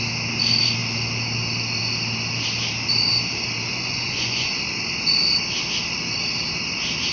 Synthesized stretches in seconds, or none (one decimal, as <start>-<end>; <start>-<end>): 3.7-4.6